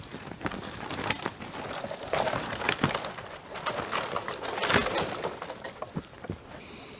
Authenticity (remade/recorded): recorded